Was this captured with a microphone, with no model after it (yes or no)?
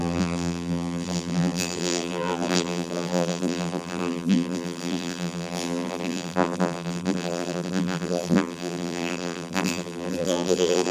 no